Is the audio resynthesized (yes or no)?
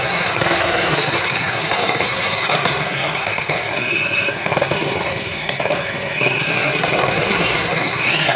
yes